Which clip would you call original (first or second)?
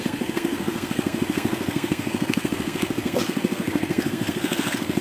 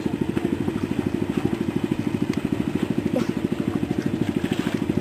second